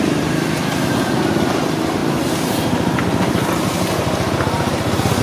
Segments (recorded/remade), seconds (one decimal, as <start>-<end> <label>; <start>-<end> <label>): 0.0-5.2 recorded